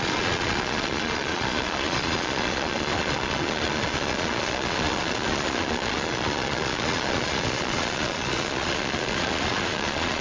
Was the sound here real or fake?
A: fake